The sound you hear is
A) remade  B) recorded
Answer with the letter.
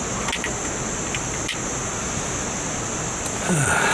B